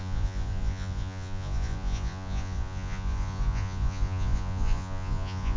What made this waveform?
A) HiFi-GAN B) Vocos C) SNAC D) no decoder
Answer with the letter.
B